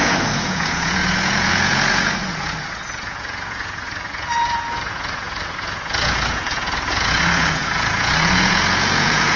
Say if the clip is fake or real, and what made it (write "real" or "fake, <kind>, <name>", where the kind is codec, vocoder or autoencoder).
fake, vocoder, Vocos